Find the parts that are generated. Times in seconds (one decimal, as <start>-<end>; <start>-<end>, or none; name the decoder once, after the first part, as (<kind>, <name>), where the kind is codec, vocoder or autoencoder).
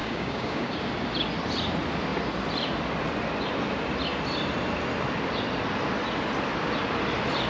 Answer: 0.0-0.9 (codec, DAC)